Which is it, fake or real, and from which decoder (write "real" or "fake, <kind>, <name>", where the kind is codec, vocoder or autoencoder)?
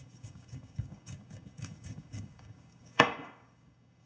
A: fake, codec, DAC